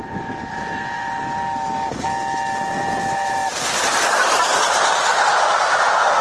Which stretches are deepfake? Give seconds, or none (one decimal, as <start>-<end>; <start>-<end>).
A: none